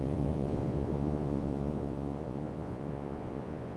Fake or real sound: fake